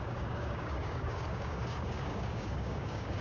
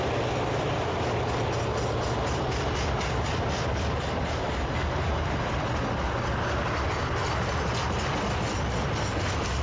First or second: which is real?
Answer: second